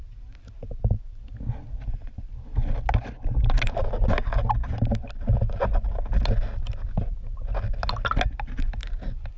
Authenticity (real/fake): real